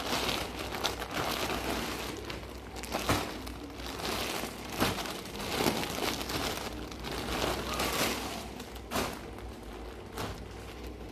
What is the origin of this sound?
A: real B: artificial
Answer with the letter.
A